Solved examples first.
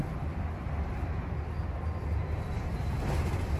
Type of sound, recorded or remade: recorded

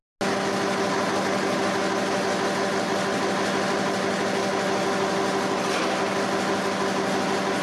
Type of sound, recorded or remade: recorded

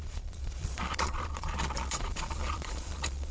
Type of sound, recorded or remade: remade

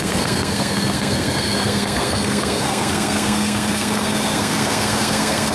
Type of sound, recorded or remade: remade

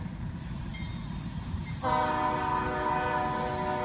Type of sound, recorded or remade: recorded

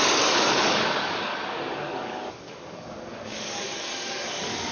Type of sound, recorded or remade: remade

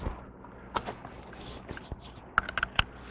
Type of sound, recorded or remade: recorded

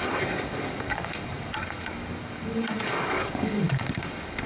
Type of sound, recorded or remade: remade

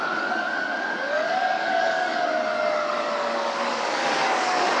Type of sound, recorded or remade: remade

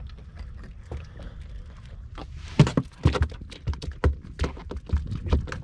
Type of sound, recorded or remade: recorded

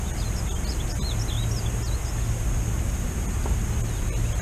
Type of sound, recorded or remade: recorded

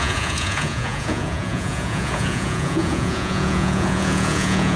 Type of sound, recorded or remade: remade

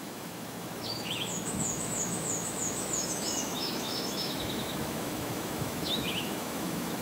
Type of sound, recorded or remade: remade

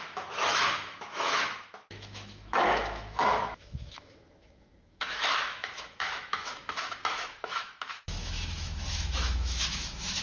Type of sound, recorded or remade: remade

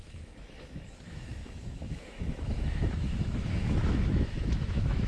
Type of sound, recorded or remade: remade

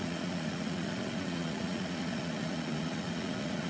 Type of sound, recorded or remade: remade